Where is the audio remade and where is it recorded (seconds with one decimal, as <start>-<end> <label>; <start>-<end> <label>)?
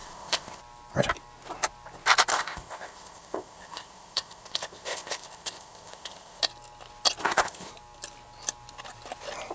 0.0-0.6 remade; 0.6-2.3 recorded; 2.3-6.4 remade; 6.4-7.2 recorded; 7.2-7.7 remade; 7.7-9.5 recorded